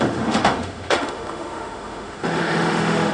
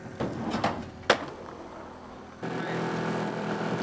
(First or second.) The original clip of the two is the second